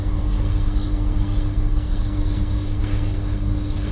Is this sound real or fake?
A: fake